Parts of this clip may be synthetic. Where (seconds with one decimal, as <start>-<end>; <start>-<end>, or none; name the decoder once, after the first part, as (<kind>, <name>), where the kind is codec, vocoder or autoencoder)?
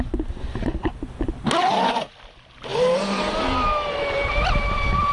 2.7-3.5 (vocoder, BigVGAN v2)